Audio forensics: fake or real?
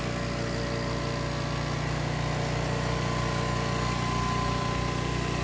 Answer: real